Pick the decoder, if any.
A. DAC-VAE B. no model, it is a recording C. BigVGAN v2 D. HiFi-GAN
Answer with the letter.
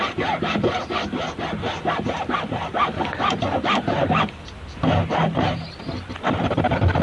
C